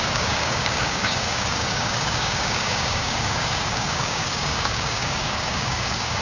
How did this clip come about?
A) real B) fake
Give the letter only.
B